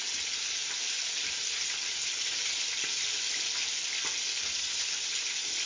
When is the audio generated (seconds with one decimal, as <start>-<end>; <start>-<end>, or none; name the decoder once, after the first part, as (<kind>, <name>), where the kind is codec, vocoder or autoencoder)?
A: none